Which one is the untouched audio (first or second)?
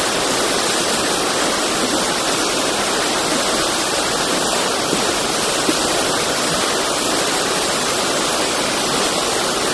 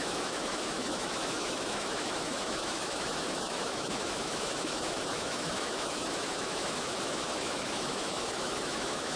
first